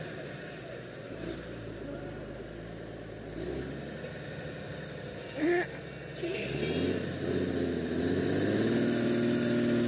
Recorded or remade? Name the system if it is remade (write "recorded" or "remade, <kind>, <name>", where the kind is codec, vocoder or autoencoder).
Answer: recorded